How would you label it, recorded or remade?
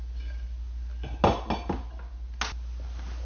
recorded